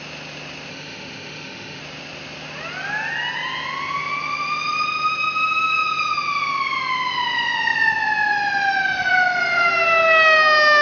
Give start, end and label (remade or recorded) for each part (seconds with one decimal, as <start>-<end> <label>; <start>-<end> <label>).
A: 0.0-0.7 recorded; 0.7-1.8 remade; 1.8-10.8 recorded